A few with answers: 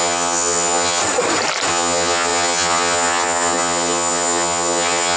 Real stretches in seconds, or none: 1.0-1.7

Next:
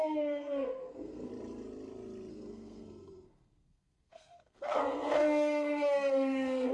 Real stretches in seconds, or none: 1.3-2.3